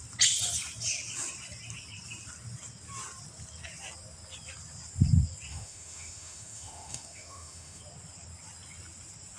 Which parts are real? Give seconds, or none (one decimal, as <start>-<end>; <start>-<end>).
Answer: 0.0-5.5; 7.8-9.4

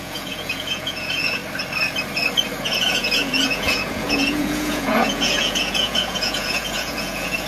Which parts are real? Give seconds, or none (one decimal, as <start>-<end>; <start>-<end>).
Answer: 1.4-2.6

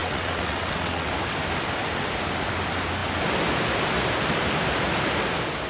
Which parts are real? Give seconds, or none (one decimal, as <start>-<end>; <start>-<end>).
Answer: 1.1-5.7